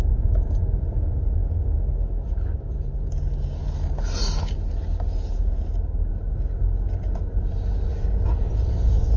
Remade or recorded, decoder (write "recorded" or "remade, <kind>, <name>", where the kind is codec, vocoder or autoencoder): recorded